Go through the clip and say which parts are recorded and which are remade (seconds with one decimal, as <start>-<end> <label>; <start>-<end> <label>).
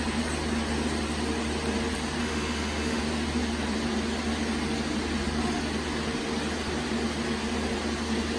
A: 0.0-2.2 recorded; 2.2-3.0 remade; 3.0-8.4 recorded